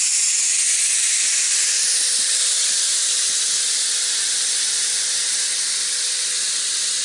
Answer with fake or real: real